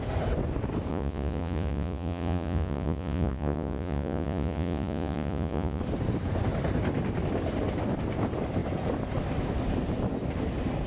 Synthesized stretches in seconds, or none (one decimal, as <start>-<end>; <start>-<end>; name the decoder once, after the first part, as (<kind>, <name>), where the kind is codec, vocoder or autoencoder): 0.9-5.8 (vocoder, Vocos)